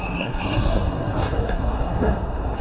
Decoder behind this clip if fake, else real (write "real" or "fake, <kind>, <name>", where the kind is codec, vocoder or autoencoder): fake, codec, SNAC